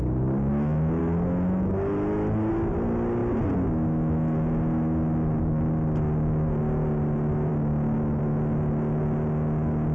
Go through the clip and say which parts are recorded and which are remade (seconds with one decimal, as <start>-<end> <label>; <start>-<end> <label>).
0.0-1.0 recorded; 1.0-2.5 remade; 2.5-9.9 recorded